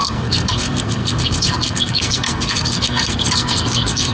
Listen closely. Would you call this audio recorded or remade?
remade